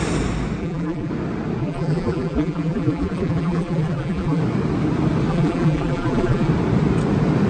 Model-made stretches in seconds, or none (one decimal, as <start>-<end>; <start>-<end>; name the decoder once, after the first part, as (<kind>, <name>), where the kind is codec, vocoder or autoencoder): 0.6-1.1 (vocoder, BigVGAN v2); 1.6-4.4; 5.3-6.5